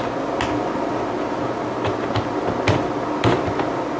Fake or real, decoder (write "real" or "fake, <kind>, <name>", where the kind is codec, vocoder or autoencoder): real